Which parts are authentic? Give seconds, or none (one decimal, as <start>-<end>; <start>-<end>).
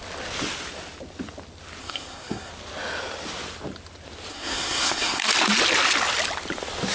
0.0-1.8; 2.5-4.3; 5.3-6.9